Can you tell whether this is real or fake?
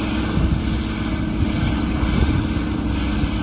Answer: real